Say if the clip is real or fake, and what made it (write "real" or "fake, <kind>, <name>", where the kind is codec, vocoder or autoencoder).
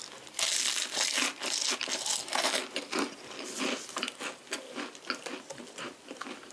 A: real